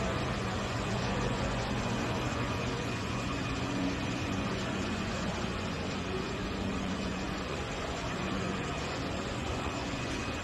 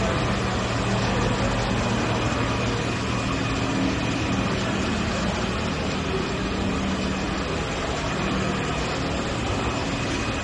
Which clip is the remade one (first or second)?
first